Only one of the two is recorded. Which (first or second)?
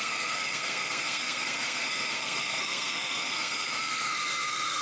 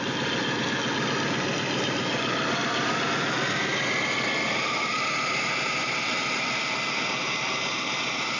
second